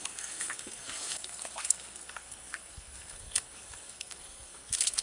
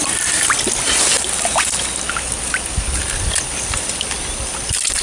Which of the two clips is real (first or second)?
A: second